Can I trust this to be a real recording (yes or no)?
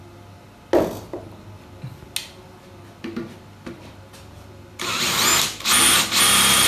yes